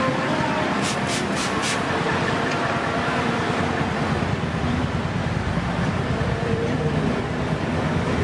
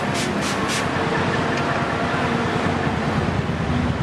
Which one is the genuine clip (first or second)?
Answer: second